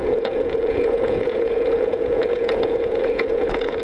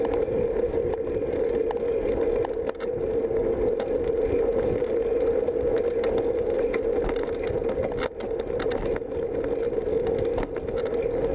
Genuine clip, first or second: second